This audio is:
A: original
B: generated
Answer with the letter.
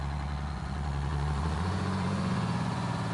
B